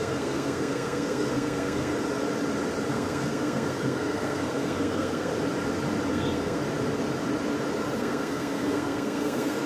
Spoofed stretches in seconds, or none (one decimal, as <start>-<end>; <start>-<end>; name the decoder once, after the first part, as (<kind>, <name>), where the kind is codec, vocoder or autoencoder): 0.0-1.9 (codec, SNAC); 2.9-5.3; 6.1-6.6; 8.0-9.7